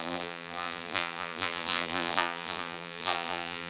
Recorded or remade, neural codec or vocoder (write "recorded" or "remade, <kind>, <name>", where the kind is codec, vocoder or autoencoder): remade, vocoder, BigVGAN v2